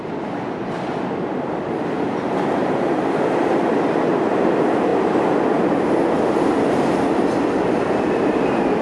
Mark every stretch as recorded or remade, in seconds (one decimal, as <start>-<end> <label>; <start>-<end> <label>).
0.0-4.3 remade; 4.3-4.9 recorded; 4.9-8.8 remade